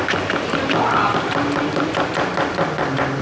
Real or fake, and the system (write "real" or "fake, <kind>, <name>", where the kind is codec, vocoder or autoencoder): real